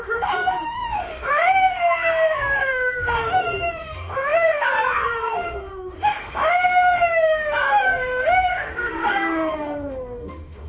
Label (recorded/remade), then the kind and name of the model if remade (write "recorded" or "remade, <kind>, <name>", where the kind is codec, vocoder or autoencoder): remade, autoencoder, DAC-VAE